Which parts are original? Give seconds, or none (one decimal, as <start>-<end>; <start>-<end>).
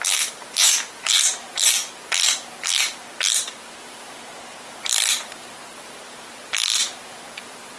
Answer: none